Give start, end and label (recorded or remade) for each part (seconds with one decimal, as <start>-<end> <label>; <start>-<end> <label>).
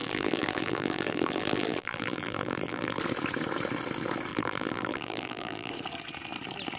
0.0-3.0 remade; 3.0-4.3 recorded; 4.3-5.7 remade; 5.7-6.8 recorded